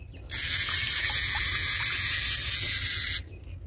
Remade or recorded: recorded